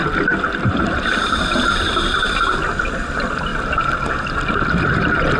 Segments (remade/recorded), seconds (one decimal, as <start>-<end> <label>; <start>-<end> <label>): 0.0-5.4 recorded